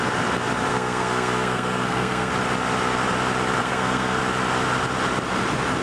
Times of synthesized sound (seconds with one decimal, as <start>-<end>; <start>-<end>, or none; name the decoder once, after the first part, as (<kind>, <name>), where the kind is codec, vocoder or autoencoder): 0.7-2.3 (codec, SNAC); 3.6-4.2